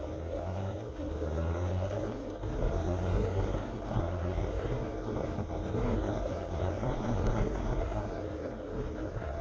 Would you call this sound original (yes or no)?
no